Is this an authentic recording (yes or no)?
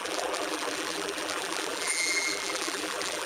no